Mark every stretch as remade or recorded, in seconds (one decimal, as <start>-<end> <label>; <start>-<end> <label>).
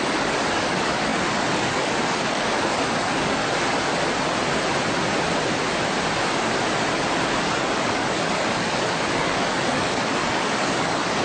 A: 0.0-3.4 remade; 3.4-7.3 recorded; 7.3-11.2 remade